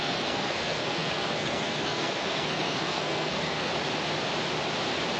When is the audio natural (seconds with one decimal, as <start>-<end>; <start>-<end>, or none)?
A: 3.7-5.2